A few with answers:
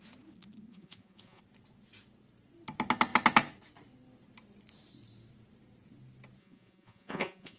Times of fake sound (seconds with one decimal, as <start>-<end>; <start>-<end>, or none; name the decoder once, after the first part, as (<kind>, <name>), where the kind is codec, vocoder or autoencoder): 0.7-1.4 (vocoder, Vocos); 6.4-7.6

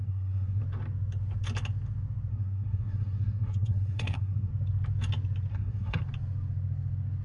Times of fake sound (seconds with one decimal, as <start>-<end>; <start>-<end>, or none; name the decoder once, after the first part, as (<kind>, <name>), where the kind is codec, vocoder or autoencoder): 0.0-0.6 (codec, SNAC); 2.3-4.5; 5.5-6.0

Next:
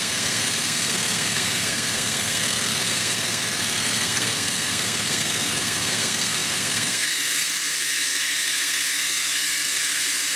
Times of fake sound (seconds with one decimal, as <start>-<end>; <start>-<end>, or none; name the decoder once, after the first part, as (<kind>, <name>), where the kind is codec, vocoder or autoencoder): 0.0-10.4 (codec, SNAC)

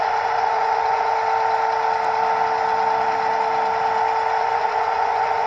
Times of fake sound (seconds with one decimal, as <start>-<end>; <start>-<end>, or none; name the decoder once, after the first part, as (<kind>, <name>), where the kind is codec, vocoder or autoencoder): 0.0-1.1 (vocoder, Vocos); 4.4-5.5